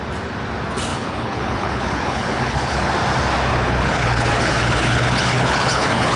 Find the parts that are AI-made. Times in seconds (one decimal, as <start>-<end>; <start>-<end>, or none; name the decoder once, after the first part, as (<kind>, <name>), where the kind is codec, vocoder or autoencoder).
0.9-2.9 (codec, HILCodec); 3.5-6.2